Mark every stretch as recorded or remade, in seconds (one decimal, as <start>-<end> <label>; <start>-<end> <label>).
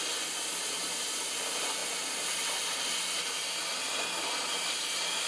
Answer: 0.0-5.3 recorded